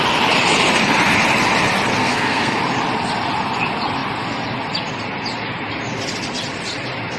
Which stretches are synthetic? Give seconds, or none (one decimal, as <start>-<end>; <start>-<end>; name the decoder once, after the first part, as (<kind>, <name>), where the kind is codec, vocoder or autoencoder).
2.0-2.6 (codec, SNAC)